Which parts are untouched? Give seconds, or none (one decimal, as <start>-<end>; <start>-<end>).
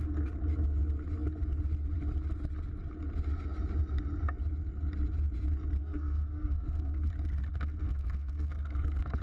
0.0-5.8; 7.1-7.5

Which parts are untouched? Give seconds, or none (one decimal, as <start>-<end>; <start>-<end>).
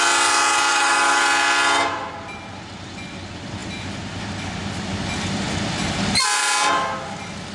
0.0-0.7; 1.2-7.5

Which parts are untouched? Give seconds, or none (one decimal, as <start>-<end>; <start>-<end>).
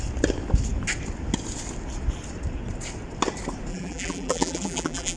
0.0-3.7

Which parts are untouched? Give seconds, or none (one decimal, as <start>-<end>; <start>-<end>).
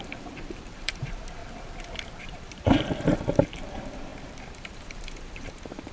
1.4-2.2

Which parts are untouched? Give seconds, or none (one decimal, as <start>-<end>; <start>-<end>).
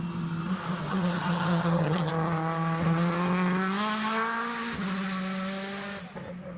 0.0-0.9; 2.1-6.6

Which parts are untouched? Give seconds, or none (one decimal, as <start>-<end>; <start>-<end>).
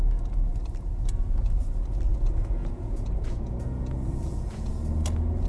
0.0-2.1; 4.7-5.5